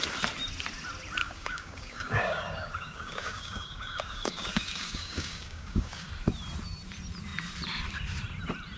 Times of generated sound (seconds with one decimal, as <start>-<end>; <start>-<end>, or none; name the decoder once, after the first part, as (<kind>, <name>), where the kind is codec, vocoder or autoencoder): 1.2-6.1 (codec, DAC)